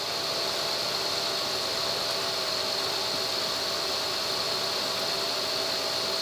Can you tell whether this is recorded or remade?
recorded